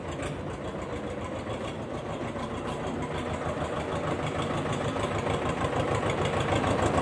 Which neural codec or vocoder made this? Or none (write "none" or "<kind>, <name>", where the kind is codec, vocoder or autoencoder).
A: none